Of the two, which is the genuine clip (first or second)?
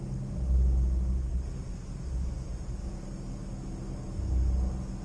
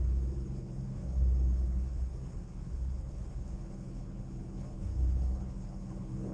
first